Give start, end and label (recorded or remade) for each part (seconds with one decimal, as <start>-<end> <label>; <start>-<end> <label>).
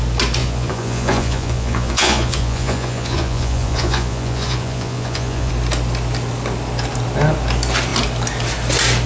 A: 0.0-0.4 recorded; 0.4-5.5 remade; 5.5-9.1 recorded